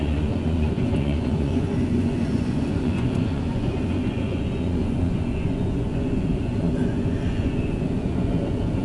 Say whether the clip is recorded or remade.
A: remade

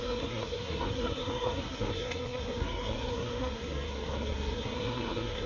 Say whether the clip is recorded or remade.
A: remade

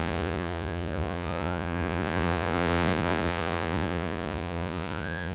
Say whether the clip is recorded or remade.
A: remade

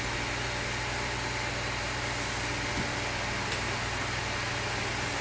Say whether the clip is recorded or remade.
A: recorded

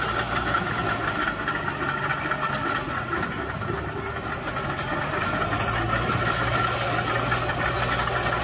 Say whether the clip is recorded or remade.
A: recorded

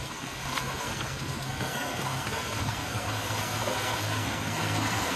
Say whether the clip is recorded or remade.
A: remade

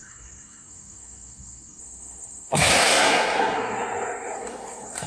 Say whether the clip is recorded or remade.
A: remade